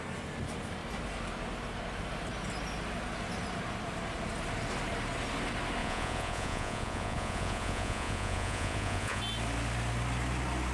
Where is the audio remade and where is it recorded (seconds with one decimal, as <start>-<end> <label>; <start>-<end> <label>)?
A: 0.0-5.8 recorded; 5.8-9.2 remade; 9.2-10.7 recorded